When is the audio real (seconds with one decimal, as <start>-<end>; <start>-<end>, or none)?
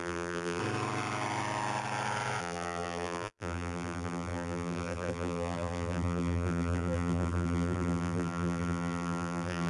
0.6-2.4